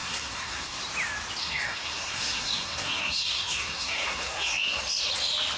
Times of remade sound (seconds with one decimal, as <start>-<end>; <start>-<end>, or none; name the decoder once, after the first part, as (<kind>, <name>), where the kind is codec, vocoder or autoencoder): 0.0-0.8 (codec, SNAC); 1.4-4.8